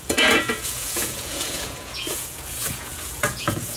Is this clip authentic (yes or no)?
no